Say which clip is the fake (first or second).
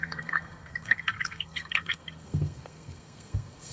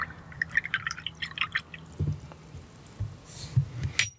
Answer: first